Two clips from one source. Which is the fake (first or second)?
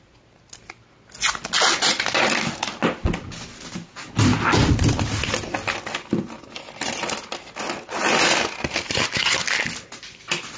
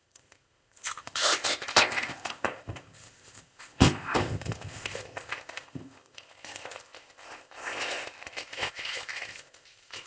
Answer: second